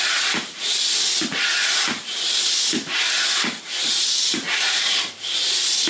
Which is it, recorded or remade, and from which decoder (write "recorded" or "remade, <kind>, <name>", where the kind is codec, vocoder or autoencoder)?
recorded